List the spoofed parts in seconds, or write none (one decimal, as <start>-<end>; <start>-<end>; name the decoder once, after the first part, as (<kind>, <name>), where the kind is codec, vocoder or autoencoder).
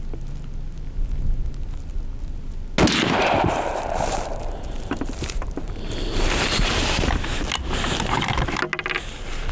3.2-7.5 (vocoder, BigVGAN v2)